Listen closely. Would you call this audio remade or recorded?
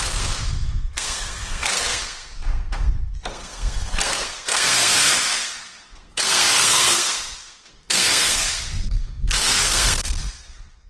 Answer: remade